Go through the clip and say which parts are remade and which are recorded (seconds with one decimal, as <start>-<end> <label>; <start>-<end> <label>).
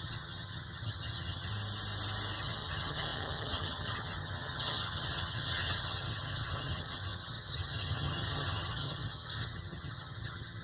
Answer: 0.0-1.5 remade; 1.5-2.4 recorded; 2.4-10.6 remade